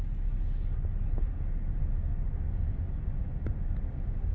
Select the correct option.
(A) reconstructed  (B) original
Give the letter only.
B